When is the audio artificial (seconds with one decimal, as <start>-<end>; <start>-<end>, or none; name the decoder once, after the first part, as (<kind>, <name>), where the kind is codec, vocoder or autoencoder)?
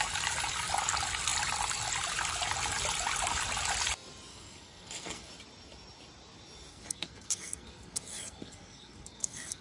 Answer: 4.3-5.3 (codec, SNAC); 6.7-9.6